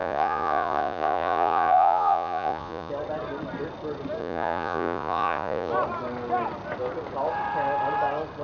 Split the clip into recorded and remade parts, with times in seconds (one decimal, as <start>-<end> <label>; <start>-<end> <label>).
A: 0.0-2.9 remade; 2.9-4.2 recorded; 4.2-5.7 remade; 5.7-8.4 recorded